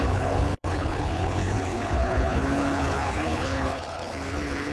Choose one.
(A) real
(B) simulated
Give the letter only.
B